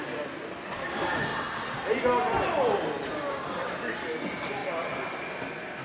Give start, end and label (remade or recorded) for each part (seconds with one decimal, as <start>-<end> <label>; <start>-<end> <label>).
0.0-1.3 recorded; 1.3-2.0 remade; 2.0-5.8 recorded

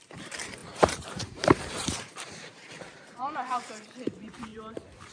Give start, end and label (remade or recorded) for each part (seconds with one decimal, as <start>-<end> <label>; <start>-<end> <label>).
0.0-0.6 recorded; 0.6-3.7 remade; 3.7-4.5 recorded; 4.5-5.1 remade

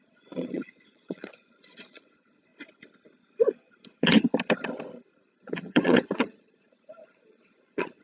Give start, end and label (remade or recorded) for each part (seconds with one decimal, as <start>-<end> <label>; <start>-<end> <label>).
0.0-2.5 remade; 2.5-5.3 recorded; 5.3-8.0 remade

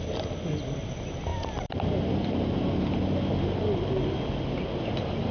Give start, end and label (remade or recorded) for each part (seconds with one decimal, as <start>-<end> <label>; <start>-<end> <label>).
0.0-1.3 recorded; 1.3-1.9 remade; 1.9-5.3 recorded

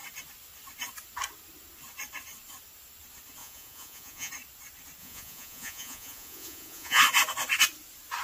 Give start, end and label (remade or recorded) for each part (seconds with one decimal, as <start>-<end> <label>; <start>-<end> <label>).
0.0-3.4 recorded; 3.4-4.3 remade; 4.3-5.0 recorded; 5.0-7.0 remade; 7.0-8.2 recorded

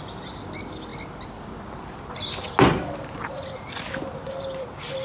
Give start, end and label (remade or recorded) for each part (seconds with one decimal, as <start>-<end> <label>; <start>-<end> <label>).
0.0-5.0 recorded

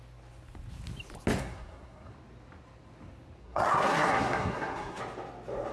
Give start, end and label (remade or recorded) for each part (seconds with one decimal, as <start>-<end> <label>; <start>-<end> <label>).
0.0-1.4 recorded; 1.4-2.1 remade; 2.1-3.4 recorded; 3.4-5.0 remade; 5.0-5.7 recorded